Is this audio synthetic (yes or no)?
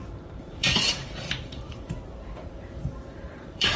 yes